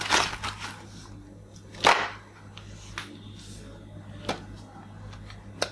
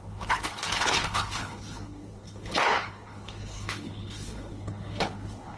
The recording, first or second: first